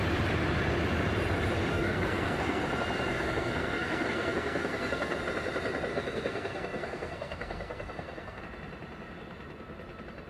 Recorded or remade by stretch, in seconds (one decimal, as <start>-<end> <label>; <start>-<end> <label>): 0.0-1.7 recorded; 1.7-2.6 remade; 2.6-3.1 recorded; 3.1-5.2 remade; 5.2-5.9 recorded; 5.9-8.4 remade; 8.4-10.3 recorded